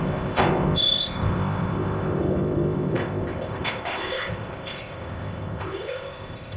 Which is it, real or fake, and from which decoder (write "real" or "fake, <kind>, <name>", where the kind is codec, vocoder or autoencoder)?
fake, codec, ZipCodec